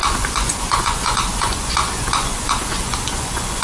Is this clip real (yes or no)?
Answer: no